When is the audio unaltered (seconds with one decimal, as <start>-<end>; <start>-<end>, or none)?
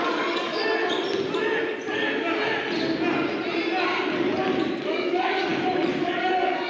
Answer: 0.8-4.8; 5.5-6.0